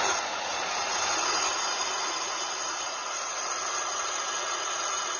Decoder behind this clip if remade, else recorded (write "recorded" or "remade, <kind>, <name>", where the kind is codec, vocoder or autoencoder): remade, vocoder, Vocos